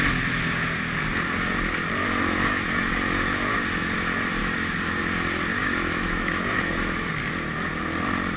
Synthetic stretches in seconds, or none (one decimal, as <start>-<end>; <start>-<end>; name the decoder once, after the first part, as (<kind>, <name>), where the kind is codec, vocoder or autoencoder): 2.0-3.6 (autoencoder, DAC-VAE); 4.4-5.0; 5.5-7.1